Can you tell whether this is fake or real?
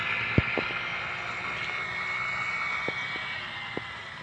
real